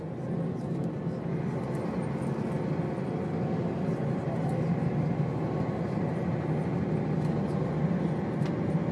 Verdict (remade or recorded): recorded